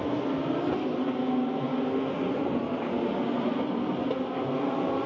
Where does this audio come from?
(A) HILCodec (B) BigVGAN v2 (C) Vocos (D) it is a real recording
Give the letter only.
D